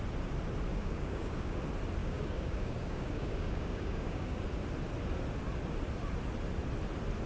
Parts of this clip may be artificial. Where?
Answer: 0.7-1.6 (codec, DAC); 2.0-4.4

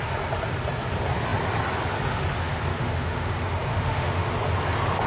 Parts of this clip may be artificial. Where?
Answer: 2.7-3.3 (autoencoder, DAC-VAE); 3.7-4.3

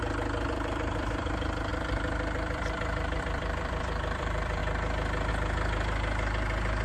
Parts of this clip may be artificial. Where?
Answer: 0.0-4.6 (vocoder, BigVGAN v2); 5.3-6.8

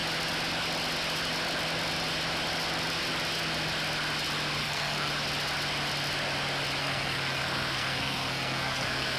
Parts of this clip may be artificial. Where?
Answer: 4.6-5.1 (codec, SNAC); 6.8-9.2

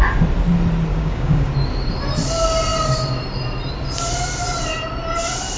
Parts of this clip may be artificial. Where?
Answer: 0.9-1.5 (codec, DAC)